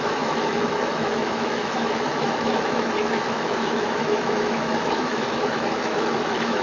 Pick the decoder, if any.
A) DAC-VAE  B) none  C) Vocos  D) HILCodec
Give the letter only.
A